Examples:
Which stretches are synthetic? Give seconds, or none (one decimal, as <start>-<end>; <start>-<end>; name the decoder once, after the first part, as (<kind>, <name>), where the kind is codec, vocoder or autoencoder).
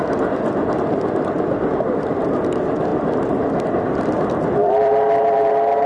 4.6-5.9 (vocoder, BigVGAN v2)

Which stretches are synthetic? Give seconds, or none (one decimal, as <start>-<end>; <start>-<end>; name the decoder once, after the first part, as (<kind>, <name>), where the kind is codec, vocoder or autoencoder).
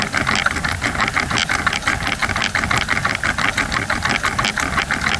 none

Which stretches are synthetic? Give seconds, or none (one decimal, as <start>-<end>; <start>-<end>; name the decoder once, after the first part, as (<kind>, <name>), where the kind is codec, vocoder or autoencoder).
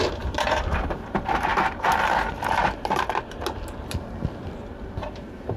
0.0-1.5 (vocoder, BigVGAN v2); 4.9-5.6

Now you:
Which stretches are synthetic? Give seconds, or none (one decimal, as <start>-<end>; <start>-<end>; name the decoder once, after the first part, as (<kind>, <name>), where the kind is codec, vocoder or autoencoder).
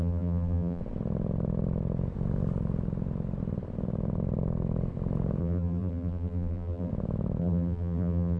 0.0-0.8 (vocoder, BigVGAN v2); 5.4-6.9; 7.4-8.4